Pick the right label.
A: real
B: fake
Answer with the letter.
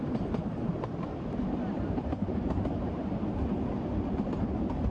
A